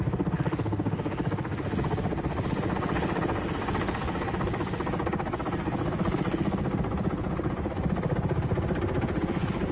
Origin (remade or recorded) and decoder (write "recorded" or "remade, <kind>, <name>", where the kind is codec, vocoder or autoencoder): recorded